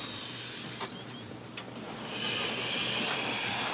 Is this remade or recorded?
recorded